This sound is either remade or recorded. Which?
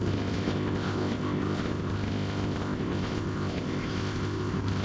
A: remade